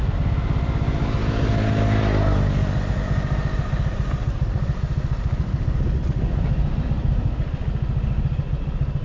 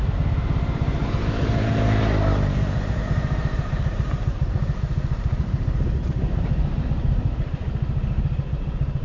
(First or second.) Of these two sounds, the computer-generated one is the second